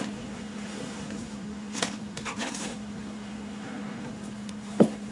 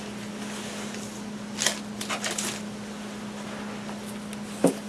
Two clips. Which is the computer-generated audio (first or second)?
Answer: first